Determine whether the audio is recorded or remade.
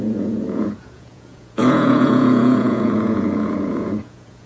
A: remade